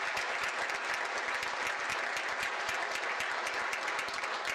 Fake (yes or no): yes